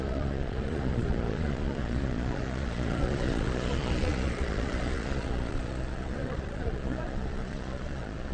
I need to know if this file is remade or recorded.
remade